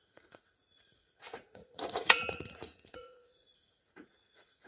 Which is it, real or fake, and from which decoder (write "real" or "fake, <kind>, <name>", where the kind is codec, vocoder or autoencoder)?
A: fake, vocoder, Vocos